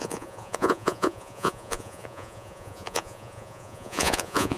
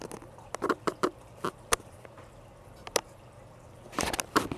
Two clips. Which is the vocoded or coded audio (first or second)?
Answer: first